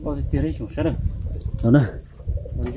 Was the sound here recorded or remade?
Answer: recorded